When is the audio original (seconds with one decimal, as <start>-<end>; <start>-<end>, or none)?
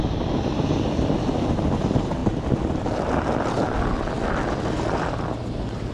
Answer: 0.0-5.9